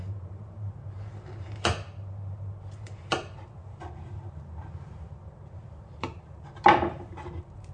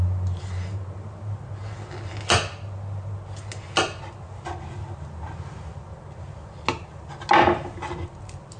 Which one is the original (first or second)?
second